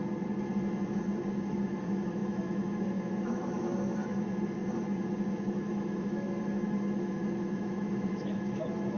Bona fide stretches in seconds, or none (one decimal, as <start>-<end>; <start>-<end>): 0.0-1.5; 4.6-5.3